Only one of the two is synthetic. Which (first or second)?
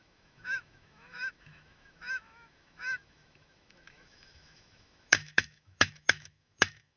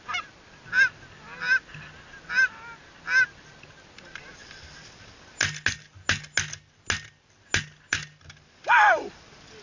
first